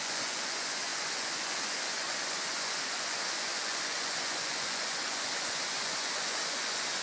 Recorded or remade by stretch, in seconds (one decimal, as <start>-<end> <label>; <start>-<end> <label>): 0.0-7.0 remade